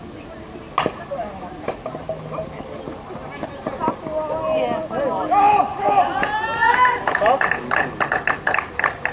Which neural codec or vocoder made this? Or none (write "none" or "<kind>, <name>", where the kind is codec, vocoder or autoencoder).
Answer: none